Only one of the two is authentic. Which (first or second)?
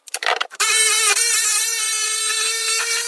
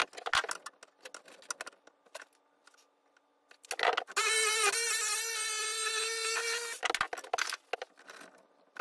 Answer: second